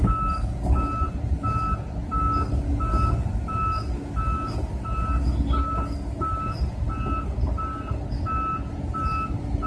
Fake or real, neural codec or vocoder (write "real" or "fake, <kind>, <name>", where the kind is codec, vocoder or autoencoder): real